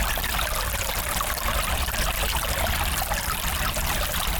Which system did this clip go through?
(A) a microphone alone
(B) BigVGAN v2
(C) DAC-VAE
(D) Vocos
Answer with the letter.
A